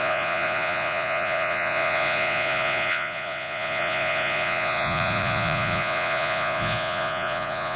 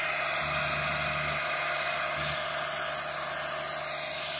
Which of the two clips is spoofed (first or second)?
first